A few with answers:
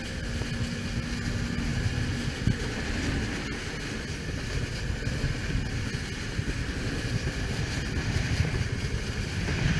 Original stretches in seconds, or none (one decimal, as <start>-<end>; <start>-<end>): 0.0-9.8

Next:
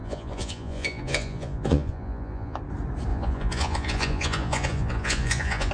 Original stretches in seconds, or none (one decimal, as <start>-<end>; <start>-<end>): 2.6-3.1

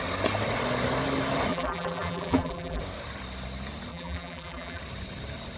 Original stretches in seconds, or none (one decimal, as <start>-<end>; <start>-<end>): 0.0-1.5; 2.8-3.9; 4.8-5.6

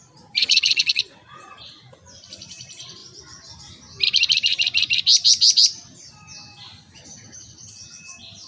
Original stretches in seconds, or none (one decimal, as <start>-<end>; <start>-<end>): 0.0-0.4; 1.5-8.5

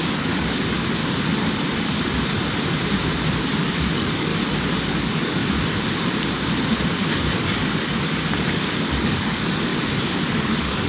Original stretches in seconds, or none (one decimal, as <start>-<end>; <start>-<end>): 1.0-3.4; 4.3-4.8; 5.4-6.9; 9.7-10.3